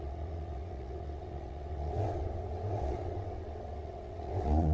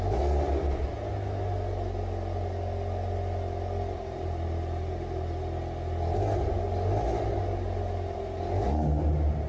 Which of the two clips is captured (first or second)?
second